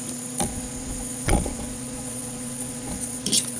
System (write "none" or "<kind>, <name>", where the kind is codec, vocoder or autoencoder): vocoder, Vocos